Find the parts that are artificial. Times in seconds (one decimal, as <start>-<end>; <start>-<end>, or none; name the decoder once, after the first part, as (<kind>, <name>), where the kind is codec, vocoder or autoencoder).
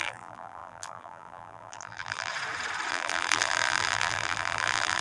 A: 0.0-2.3 (vocoder, BigVGAN v2); 2.9-5.0